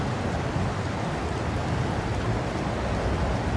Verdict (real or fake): fake